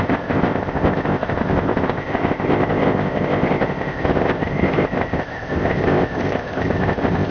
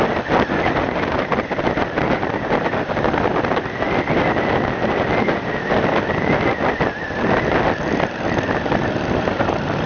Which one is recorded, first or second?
second